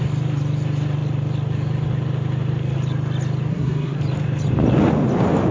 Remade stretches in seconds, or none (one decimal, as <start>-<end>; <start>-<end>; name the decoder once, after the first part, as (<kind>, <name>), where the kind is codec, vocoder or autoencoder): 3.5-4.0 (codec, SNAC)